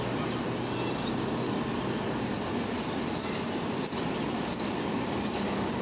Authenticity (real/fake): real